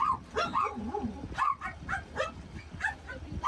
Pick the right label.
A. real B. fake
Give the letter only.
B